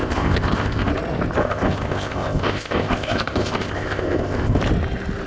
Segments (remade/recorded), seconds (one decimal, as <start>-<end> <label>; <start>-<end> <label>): 0.0-0.9 remade; 0.9-1.4 recorded; 1.4-4.6 remade; 4.6-5.3 recorded